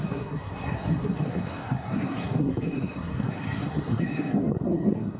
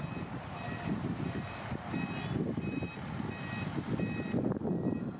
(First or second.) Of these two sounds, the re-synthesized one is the first